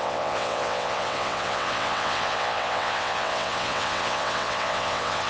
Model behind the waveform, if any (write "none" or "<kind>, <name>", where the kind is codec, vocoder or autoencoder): vocoder, WaveNeXt